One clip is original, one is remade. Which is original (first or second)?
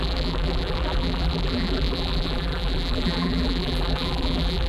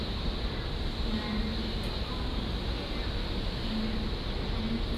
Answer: second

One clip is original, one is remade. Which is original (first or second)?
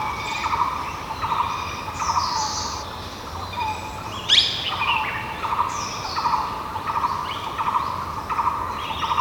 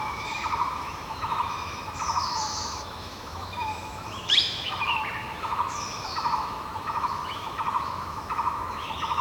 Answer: first